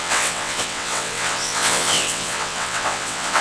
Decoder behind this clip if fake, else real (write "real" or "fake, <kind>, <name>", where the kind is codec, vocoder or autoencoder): fake, vocoder, WaveNeXt